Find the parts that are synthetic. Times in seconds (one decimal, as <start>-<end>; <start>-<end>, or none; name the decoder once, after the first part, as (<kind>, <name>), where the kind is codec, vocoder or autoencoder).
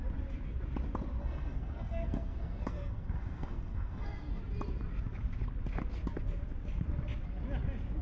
1.2-4.4 (codec, SNAC)